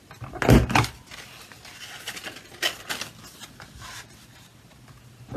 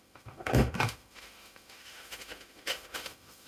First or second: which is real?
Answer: first